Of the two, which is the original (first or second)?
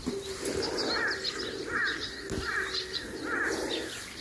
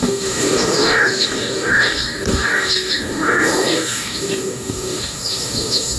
first